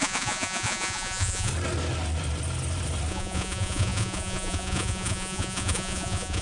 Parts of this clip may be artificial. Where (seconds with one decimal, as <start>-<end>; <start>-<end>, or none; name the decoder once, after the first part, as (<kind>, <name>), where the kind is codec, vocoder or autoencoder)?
0.0-1.5 (vocoder, Vocos); 3.1-6.4